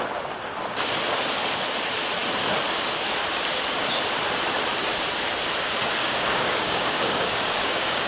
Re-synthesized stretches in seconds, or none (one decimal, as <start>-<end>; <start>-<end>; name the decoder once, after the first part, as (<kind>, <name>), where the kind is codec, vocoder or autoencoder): 6.0-8.1 (codec, DAC)